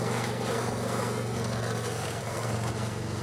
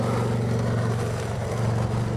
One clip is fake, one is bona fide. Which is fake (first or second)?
first